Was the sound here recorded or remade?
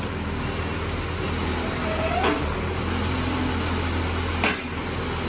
recorded